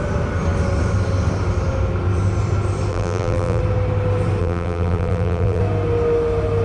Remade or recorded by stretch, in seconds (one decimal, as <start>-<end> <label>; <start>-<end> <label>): 0.0-2.9 recorded; 2.9-3.6 remade; 3.6-4.4 recorded; 4.4-5.6 remade; 5.6-6.6 recorded